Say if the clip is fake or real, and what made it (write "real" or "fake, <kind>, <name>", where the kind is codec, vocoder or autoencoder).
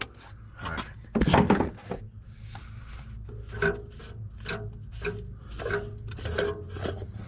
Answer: real